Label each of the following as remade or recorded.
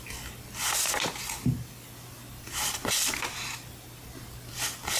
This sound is recorded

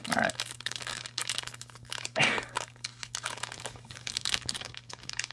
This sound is remade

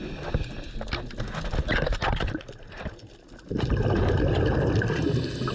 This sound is recorded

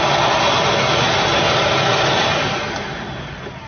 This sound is recorded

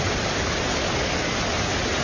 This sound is recorded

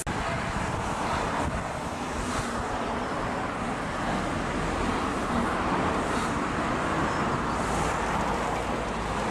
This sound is recorded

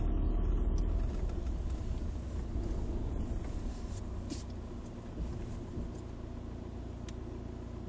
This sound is recorded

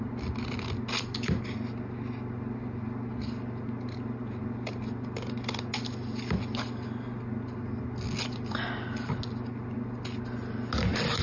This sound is recorded